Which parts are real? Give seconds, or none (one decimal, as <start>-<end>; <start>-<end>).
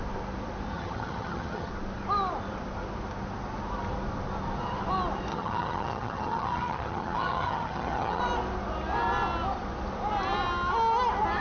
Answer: 0.0-0.7; 1.7-5.3; 8.2-11.4